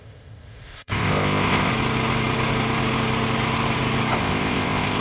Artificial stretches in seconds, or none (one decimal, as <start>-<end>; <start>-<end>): 0.0-1.7; 4.2-5.0